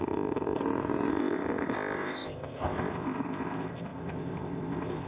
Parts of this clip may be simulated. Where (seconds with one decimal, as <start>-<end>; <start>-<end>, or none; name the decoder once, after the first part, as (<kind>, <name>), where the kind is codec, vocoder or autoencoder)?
0.0-0.6 (codec, ZipCodec); 1.1-5.1